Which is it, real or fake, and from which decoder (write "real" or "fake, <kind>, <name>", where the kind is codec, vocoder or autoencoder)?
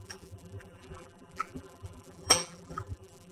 fake, vocoder, BigVGAN v2